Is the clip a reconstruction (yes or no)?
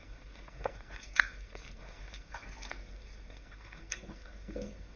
yes